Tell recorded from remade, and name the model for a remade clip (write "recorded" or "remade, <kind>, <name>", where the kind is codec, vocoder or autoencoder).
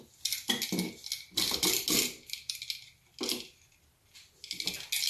recorded